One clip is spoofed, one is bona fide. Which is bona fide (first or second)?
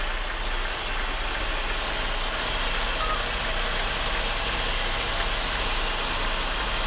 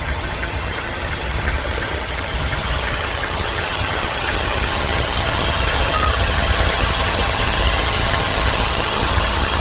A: first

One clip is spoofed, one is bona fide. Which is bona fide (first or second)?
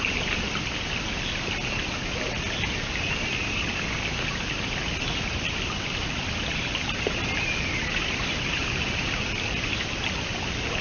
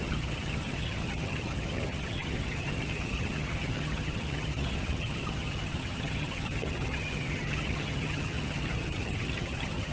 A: first